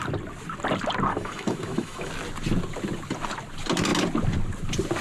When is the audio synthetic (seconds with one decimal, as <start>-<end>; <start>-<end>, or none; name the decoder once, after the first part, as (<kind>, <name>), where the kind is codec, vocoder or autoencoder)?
1.1-2.1 (autoencoder, DAC-VAE)